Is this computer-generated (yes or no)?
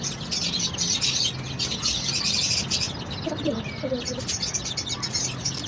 no